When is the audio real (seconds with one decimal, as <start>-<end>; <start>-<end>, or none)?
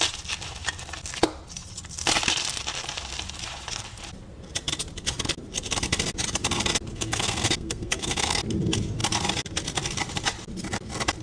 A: 0.0-6.9; 8.4-11.2